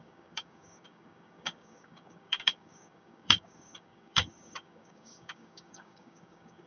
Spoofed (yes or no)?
yes